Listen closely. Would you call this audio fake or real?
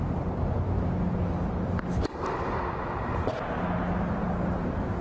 real